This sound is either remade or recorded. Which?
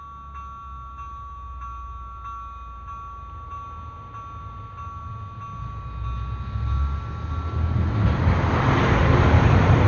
recorded